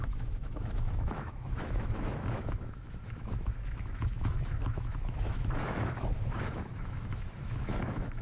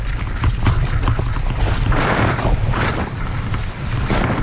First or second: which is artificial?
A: first